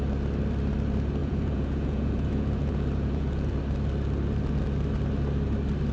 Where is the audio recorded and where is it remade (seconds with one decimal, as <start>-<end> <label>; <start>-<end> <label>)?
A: 0.0-1.2 recorded; 1.2-3.6 remade; 3.6-5.9 recorded